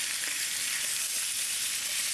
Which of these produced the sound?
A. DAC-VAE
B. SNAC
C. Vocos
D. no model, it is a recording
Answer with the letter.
D